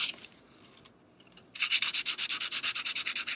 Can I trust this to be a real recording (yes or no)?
yes